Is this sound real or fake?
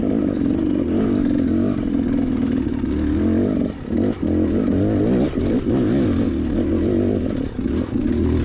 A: real